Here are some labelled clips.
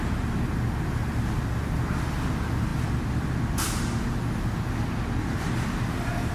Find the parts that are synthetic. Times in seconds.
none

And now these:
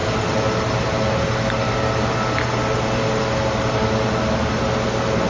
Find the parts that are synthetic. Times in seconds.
none

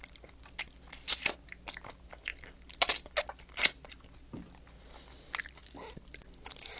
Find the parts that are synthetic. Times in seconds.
none

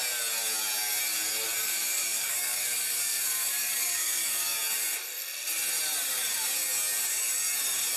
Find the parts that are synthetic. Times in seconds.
1.6-4.6 (codec, DAC)

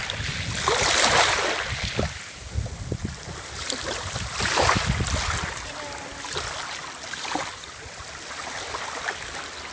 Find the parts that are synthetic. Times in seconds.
none